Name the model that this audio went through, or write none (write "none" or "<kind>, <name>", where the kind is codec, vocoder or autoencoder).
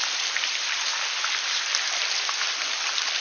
none